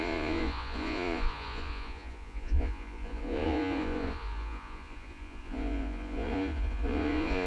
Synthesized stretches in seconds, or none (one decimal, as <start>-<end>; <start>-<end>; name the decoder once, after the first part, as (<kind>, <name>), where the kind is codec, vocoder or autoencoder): 0.0-7.5 (vocoder, Vocos)